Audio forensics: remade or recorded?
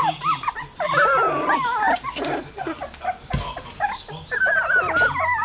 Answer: recorded